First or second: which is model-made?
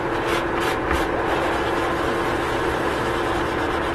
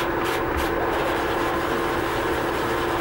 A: first